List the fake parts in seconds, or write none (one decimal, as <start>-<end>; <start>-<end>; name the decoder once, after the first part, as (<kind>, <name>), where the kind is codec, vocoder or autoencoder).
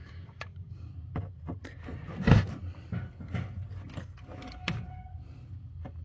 0.0-0.9 (codec, DAC)